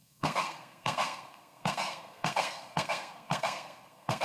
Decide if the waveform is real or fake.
fake